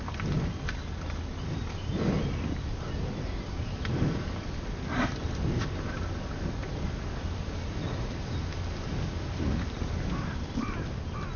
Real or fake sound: real